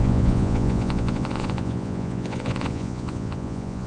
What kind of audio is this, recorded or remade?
remade